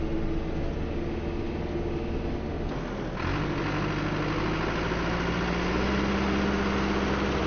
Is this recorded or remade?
recorded